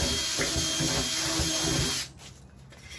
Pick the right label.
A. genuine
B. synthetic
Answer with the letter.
A